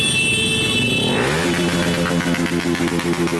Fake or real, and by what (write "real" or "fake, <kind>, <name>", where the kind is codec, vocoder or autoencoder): real